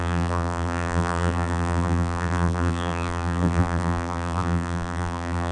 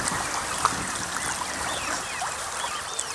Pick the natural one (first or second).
second